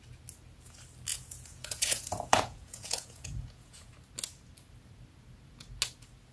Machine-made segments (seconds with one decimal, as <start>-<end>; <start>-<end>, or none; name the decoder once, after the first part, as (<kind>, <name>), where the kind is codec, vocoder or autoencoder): 1.1-3.9 (vocoder, Vocos)